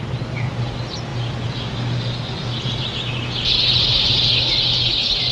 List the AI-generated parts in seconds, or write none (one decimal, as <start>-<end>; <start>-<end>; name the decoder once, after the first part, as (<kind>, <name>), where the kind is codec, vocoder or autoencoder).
none